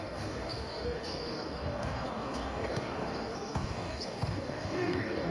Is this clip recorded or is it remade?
remade